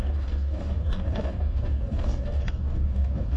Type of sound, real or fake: fake